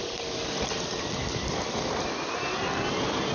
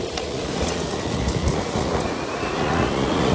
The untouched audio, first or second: first